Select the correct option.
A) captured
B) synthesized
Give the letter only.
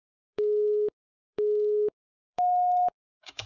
B